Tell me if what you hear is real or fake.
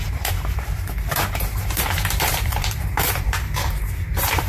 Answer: fake